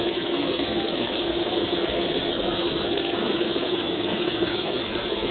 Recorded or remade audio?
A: remade